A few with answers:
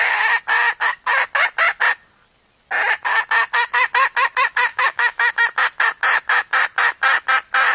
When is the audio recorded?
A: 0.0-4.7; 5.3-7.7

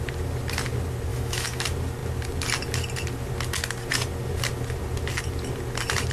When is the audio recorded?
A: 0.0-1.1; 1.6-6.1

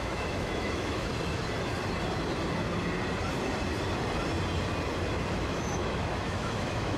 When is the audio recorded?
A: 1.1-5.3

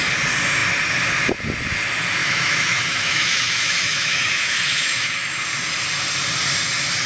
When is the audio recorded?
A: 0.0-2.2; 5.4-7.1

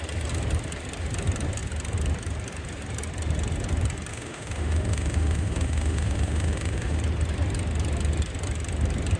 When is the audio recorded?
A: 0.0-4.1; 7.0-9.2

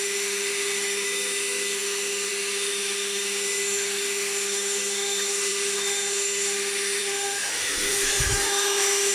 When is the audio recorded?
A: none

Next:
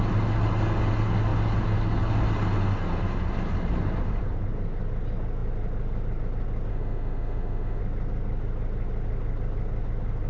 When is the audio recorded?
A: 0.0-6.7; 7.8-10.3

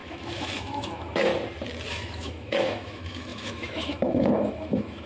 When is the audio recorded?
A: 1.3-1.9